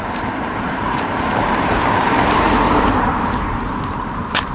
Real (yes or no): no